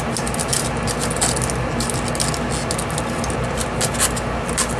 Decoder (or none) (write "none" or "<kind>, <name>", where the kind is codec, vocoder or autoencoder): none